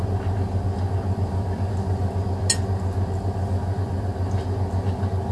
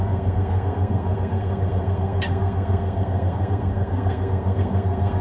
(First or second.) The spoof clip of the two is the second